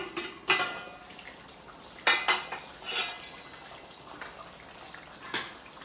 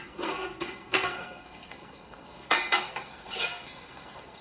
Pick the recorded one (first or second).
first